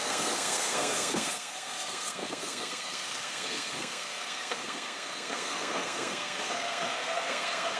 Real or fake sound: fake